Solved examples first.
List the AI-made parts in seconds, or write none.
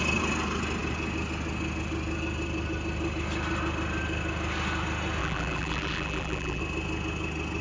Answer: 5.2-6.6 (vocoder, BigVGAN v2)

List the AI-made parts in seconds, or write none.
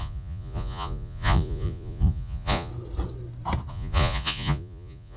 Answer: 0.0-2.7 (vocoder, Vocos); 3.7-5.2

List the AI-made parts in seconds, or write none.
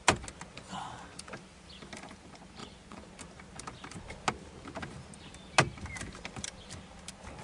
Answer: 0.5-1.3 (vocoder, Vocos); 2.6-3.1